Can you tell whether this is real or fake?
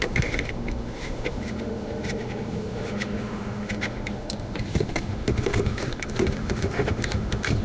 fake